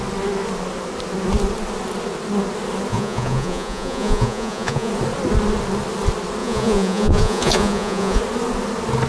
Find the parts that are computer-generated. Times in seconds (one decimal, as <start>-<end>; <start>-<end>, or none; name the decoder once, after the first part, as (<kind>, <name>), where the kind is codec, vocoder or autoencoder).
2.9-4.9 (vocoder, Vocos); 6.4-8.2